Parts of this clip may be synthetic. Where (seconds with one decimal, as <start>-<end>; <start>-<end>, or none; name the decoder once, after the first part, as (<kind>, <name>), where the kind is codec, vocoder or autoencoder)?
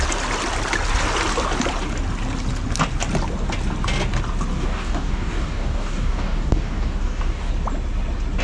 4.5-7.5 (codec, DAC)